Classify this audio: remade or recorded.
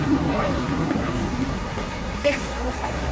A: remade